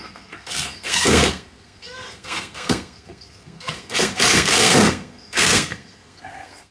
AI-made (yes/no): yes